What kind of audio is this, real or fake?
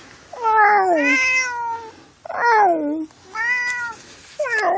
real